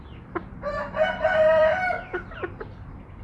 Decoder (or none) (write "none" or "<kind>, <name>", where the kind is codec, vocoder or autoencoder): vocoder, BigVGAN v2